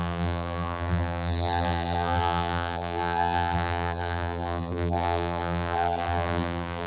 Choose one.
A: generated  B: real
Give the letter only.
A